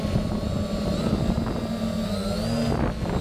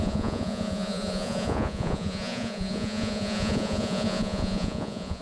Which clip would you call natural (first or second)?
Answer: first